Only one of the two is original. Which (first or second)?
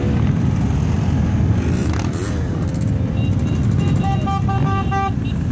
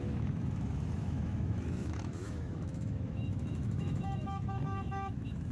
first